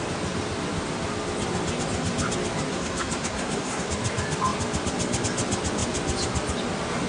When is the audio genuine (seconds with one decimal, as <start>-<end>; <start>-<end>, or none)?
0.0-2.7; 3.9-7.1